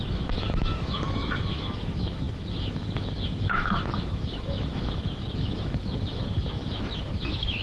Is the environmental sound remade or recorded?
remade